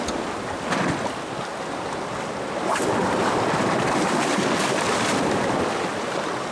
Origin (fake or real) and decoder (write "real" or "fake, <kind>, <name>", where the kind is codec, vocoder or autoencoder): real